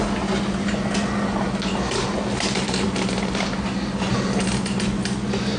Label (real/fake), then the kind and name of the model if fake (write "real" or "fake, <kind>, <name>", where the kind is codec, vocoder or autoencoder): real